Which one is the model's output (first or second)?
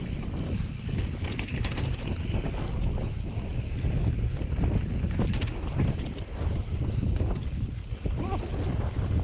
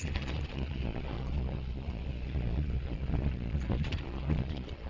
second